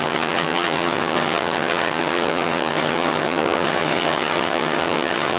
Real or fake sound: fake